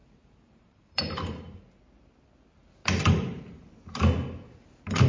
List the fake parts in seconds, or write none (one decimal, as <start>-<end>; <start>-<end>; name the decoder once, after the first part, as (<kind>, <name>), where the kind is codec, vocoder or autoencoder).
0.0-1.6 (vocoder, BigVGAN v2); 2.8-3.7